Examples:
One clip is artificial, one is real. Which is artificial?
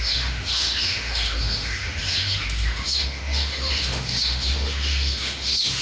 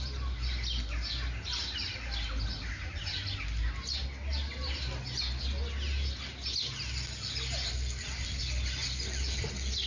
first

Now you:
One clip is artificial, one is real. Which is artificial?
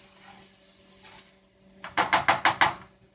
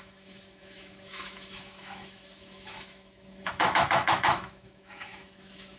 second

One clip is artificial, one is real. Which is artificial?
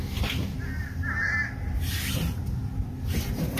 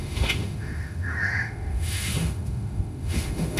second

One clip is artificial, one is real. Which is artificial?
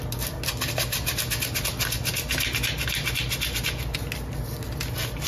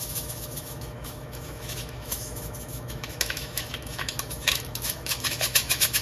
second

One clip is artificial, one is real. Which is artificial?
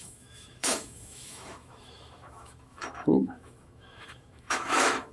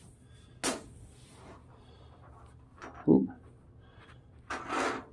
first